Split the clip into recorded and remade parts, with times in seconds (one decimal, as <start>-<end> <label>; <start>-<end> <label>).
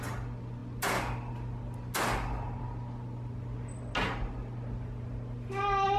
0.0-6.0 recorded